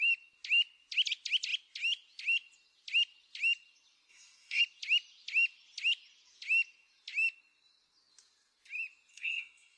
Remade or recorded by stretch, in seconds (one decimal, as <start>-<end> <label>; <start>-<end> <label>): 0.0-4.1 recorded; 4.1-4.6 remade; 4.6-9.1 recorded; 9.1-9.8 remade